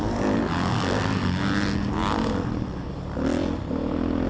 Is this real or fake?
real